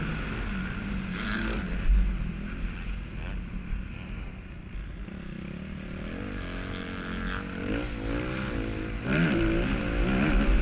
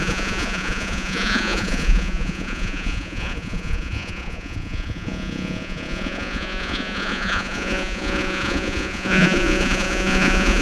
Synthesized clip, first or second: second